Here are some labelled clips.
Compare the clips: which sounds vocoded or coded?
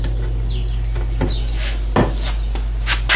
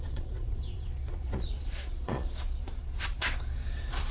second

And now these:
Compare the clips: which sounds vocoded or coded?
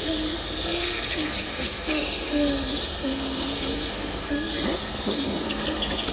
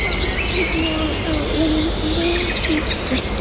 first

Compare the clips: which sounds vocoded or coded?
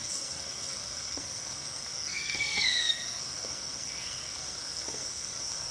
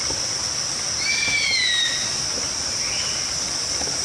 first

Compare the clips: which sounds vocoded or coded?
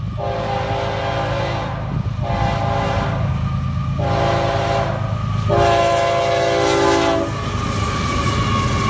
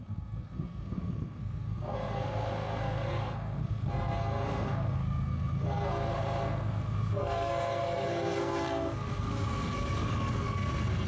second